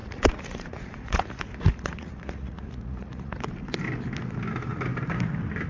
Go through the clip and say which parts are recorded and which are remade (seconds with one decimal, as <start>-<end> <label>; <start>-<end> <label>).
0.0-3.4 remade; 3.4-5.7 recorded